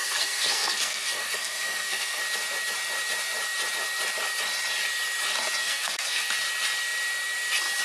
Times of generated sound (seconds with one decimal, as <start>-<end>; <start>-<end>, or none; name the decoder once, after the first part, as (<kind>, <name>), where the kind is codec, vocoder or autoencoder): 0.0-2.2 (codec, SNAC); 5.6-6.3